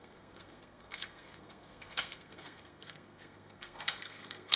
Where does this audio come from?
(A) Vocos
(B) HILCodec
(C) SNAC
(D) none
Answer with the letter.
C